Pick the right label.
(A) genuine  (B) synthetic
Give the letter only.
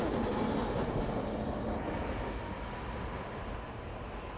A